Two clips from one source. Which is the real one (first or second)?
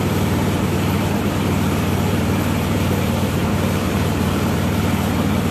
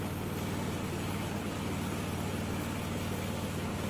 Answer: second